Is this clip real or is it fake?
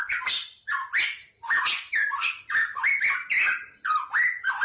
real